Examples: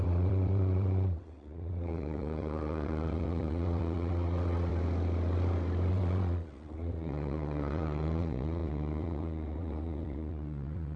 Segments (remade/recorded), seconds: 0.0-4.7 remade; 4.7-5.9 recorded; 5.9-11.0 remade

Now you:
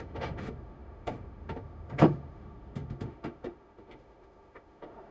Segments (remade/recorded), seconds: 0.0-5.1 remade

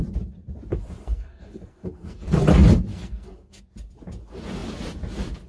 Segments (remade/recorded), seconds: 0.0-1.0 recorded; 1.0-2.4 remade; 2.4-2.9 recorded; 2.9-3.6 remade; 3.6-5.5 recorded